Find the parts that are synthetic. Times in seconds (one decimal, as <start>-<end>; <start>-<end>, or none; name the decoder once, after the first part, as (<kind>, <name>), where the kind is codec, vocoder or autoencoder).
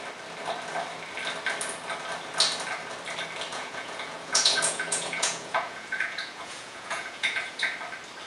3.5-7.7 (vocoder, Vocos)